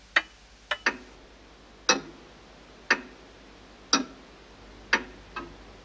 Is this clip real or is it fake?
real